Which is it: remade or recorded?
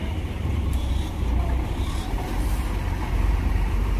remade